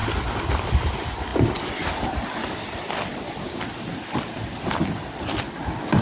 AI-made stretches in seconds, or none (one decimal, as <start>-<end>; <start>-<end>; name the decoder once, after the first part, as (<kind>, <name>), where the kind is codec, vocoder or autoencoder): 1.3-2.1 (vocoder, BigVGAN v2)